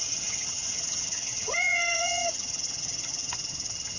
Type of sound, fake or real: fake